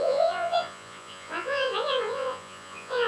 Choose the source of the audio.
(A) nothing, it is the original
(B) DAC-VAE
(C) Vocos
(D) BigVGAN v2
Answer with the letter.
C